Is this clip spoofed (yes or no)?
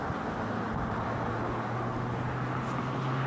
no